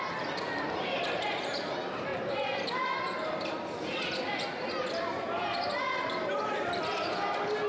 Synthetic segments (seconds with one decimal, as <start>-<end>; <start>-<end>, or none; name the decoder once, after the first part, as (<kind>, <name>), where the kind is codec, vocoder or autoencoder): none